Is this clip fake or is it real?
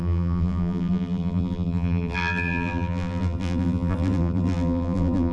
fake